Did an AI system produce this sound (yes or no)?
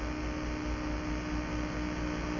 no